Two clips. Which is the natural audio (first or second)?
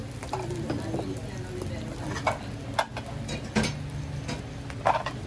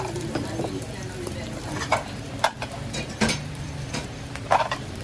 first